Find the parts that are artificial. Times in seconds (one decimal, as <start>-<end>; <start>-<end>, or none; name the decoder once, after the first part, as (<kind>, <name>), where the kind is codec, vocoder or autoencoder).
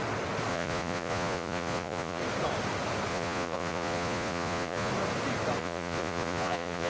0.5-2.2 (vocoder, Vocos); 3.1-4.9; 5.6-6.9